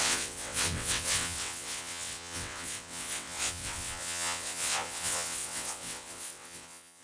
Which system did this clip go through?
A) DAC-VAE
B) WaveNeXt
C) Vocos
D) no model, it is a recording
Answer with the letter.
B